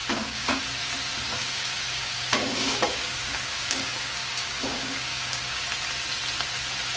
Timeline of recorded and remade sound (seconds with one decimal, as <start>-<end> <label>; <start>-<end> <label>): 0.0-0.6 remade; 0.6-1.4 recorded; 1.4-5.6 remade; 5.6-7.0 recorded